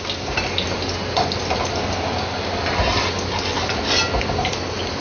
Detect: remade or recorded recorded